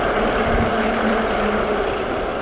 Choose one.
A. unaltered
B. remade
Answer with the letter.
A